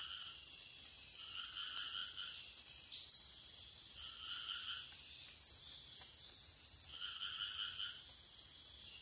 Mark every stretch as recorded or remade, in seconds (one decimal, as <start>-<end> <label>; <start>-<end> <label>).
0.0-9.0 recorded